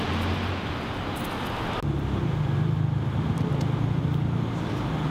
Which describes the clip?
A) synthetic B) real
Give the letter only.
B